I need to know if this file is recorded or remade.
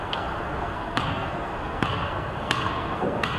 remade